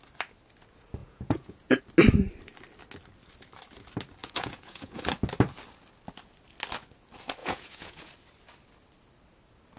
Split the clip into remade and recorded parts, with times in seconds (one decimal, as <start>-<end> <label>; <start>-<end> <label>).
0.0-1.0 recorded; 1.0-1.8 remade; 1.8-4.2 recorded; 4.2-5.0 remade; 5.0-7.4 recorded; 7.4-8.1 remade; 8.1-9.8 recorded